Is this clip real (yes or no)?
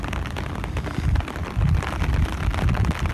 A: yes